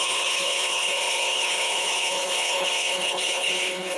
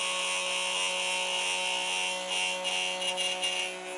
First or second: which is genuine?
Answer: second